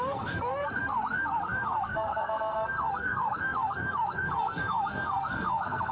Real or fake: fake